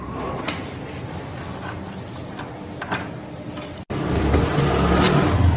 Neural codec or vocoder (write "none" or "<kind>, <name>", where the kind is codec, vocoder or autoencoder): none